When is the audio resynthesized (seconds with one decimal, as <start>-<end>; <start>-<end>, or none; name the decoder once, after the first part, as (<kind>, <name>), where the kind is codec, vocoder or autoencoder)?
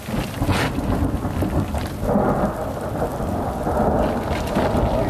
none